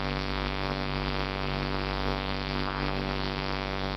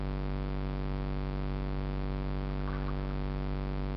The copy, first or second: first